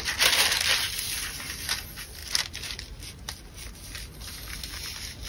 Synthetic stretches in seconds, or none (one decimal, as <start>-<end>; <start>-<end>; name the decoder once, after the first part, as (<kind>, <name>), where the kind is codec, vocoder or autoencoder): none

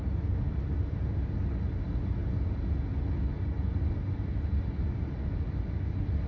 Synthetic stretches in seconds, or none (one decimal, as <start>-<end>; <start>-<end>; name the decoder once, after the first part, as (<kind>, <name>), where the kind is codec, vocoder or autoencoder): none